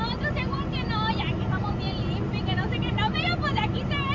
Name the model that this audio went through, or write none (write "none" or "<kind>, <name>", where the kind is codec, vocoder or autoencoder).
none